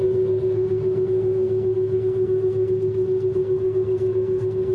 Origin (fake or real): fake